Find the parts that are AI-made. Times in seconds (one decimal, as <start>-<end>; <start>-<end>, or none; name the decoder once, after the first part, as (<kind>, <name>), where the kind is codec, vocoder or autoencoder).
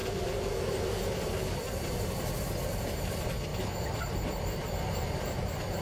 0.0-5.8 (vocoder, BigVGAN v2)